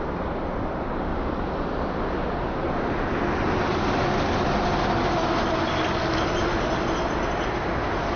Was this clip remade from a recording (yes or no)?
no